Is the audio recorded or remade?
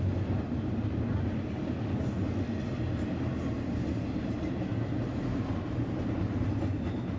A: recorded